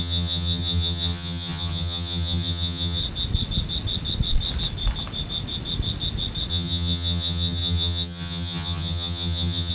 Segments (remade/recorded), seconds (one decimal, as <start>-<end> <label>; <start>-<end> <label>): 0.0-3.0 remade; 3.0-6.5 recorded; 6.5-9.7 remade